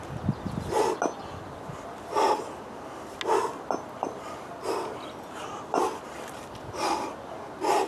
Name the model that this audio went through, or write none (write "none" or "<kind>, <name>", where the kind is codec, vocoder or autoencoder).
none